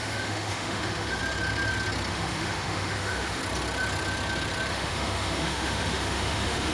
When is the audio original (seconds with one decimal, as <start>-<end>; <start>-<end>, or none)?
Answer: 1.2-2.1; 3.4-4.7